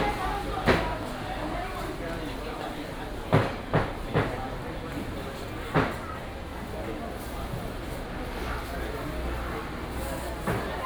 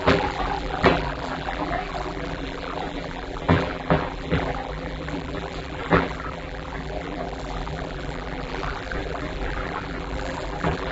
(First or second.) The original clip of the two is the first